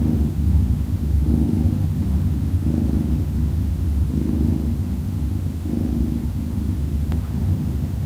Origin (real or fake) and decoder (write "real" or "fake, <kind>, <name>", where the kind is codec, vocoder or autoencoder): fake, autoencoder, DAC-VAE